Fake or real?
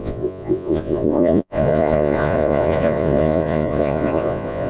fake